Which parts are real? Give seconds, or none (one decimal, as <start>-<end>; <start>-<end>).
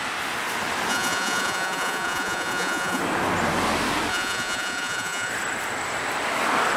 0.0-0.9; 3.0-4.1; 5.3-6.8